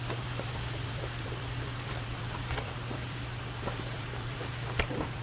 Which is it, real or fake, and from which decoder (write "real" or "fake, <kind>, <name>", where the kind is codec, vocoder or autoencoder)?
fake, vocoder, BigVGAN v2